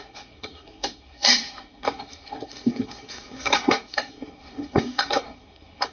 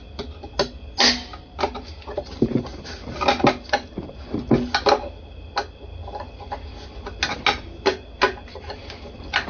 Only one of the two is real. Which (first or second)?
second